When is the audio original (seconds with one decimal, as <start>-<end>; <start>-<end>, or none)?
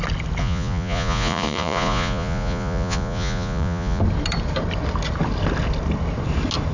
0.0-0.4; 4.0-6.7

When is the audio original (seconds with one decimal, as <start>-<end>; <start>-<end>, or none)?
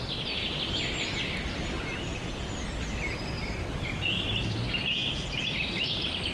0.0-6.3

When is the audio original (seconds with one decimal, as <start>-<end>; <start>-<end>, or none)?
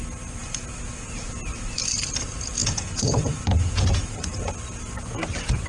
0.0-2.6; 4.3-5.7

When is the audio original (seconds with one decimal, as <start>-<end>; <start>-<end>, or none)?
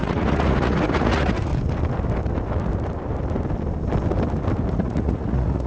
1.5-4.7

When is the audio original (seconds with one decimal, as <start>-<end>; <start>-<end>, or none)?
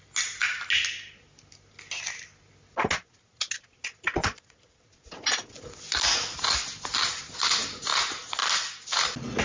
0.0-4.2; 4.8-9.4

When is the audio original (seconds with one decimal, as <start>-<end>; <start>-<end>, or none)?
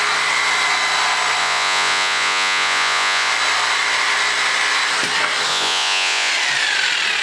0.0-1.4; 3.3-5.5; 6.3-7.2